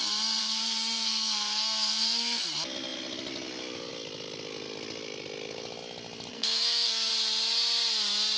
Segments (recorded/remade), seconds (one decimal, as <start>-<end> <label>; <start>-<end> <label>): 0.0-0.4 recorded; 0.4-2.4 remade; 2.4-6.3 recorded; 6.3-7.1 remade; 7.1-8.4 recorded